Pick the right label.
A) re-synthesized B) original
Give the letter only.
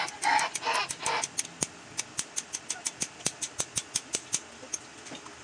B